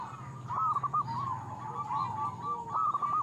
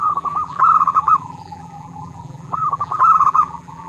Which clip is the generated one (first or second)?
second